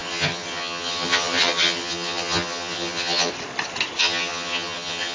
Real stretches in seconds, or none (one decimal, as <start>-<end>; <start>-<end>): 3.3-4.0